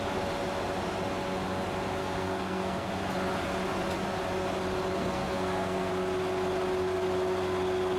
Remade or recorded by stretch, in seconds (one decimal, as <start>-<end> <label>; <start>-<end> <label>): 0.0-2.0 recorded; 2.0-2.9 remade; 2.9-5.0 recorded; 5.0-5.9 remade; 5.9-8.0 recorded